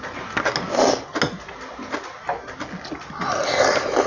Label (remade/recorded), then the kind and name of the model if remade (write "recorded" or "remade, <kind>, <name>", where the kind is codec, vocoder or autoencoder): recorded